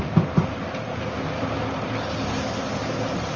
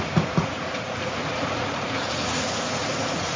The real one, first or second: first